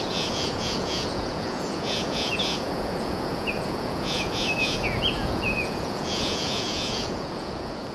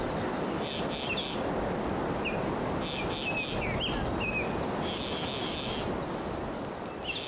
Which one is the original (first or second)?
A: second